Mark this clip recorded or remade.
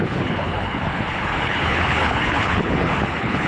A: remade